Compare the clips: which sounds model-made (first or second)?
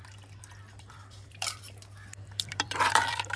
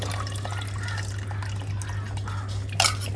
first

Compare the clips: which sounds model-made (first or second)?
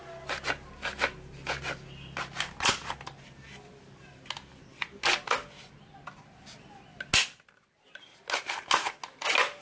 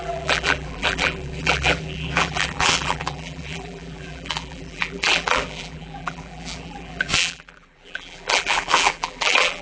second